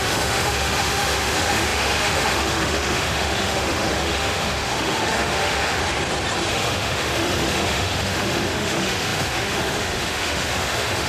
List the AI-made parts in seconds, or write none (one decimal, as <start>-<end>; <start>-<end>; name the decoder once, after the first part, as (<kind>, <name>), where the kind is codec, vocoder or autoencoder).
0.0-5.8 (autoencoder, DAC-VAE); 6.5-11.1